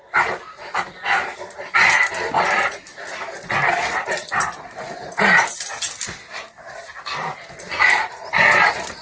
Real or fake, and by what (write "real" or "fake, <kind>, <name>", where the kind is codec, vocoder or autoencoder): real